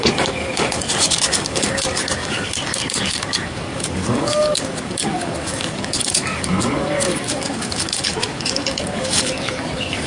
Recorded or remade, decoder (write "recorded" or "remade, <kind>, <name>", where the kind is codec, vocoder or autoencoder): remade, codec, DAC